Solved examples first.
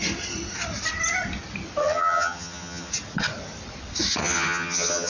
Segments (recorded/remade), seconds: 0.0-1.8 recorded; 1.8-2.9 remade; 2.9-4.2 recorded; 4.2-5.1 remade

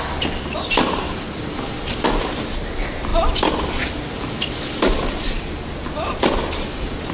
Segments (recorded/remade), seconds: 0.0-7.1 recorded

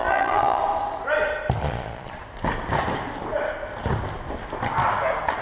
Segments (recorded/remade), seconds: 0.0-0.6 remade; 0.6-1.6 recorded; 1.6-2.2 remade; 2.2-5.4 recorded

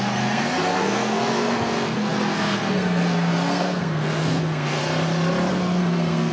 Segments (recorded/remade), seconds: 0.0-4.8 remade; 4.8-5.5 recorded; 5.5-6.3 remade

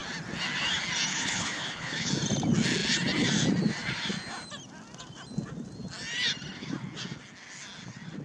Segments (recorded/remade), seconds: 0.0-1.1 recorded; 1.1-2.1 remade; 2.1-8.2 recorded

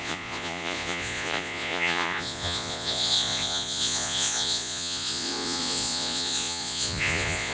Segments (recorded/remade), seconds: 0.0-7.5 remade

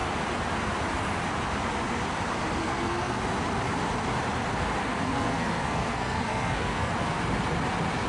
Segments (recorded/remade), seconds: 0.0-2.6 recorded; 2.6-3.2 remade; 3.2-4.8 recorded; 4.8-6.9 remade; 6.9-8.1 recorded

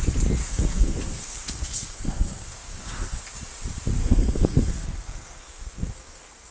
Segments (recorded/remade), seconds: 0.0-0.4 recorded; 0.4-3.2 remade; 3.2-4.0 recorded; 4.0-6.5 remade